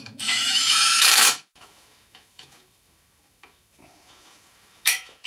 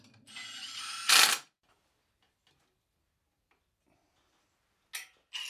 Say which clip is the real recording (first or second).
second